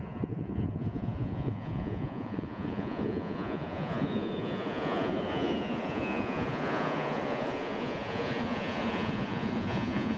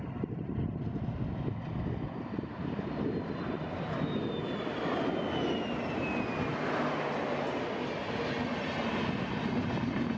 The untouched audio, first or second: second